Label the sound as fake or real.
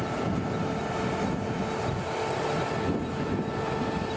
real